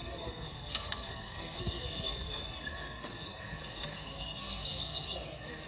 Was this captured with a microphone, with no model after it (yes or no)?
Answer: no